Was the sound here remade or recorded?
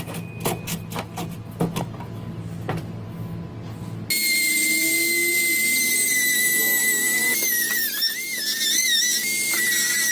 recorded